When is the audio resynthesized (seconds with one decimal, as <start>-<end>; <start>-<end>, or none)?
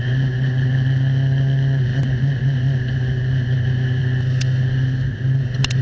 none